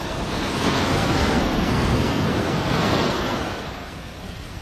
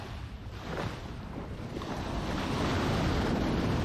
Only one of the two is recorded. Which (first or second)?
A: second